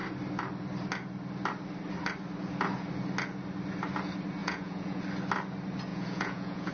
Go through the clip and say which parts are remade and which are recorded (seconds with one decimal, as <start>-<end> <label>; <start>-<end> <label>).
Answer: 0.0-4.4 recorded; 4.4-5.0 remade; 5.0-5.9 recorded; 5.9-6.7 remade